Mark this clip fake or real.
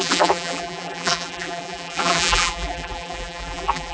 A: fake